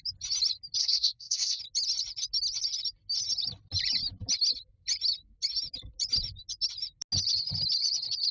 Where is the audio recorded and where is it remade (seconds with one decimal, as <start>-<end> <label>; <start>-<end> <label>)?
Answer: 0.0-0.8 recorded; 0.8-1.6 remade; 1.6-8.3 recorded